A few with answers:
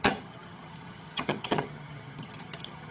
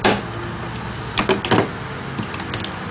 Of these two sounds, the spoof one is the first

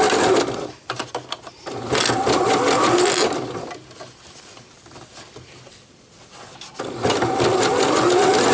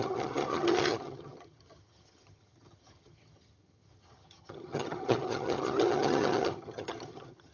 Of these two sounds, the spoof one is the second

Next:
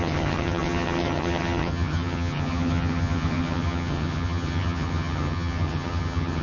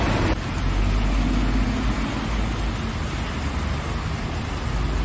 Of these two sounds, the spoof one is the first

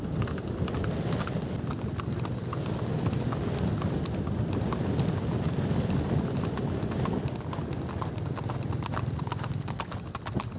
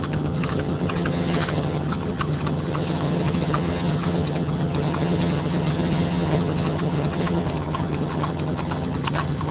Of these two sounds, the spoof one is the second